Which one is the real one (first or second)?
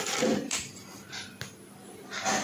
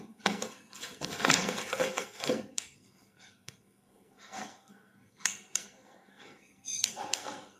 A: first